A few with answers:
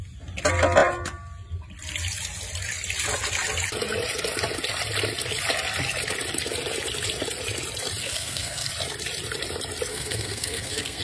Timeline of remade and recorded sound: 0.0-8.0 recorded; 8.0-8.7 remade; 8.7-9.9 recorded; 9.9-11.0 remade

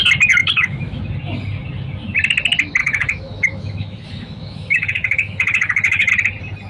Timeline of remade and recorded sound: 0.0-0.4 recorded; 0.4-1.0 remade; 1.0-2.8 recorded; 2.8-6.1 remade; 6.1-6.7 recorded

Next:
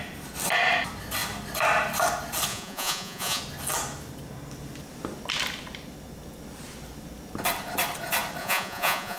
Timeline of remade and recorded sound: 0.0-2.5 recorded; 2.5-3.4 remade; 3.4-8.4 recorded; 8.4-9.2 remade

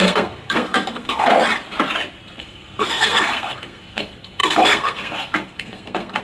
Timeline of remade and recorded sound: 0.0-1.3 remade; 1.3-2.4 recorded; 2.4-6.2 remade

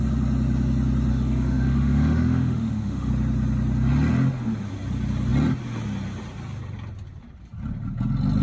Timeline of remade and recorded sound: 0.0-1.1 recorded; 1.1-3.1 remade; 3.1-8.4 recorded

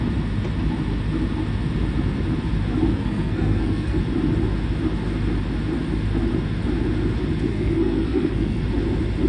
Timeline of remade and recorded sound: 0.0-2.9 recorded; 2.9-4.0 remade; 4.0-7.5 recorded; 7.5-8.6 remade; 8.6-9.3 recorded